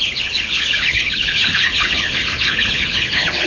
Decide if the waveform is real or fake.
fake